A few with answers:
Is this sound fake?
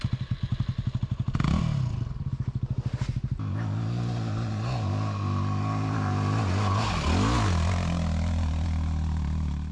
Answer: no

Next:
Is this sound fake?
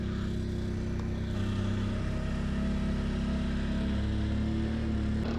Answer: no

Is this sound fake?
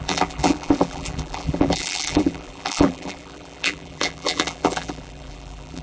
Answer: yes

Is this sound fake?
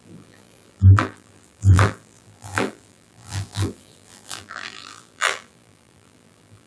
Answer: yes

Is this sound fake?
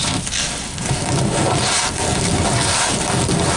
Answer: no